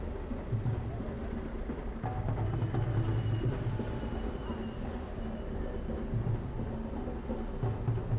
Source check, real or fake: real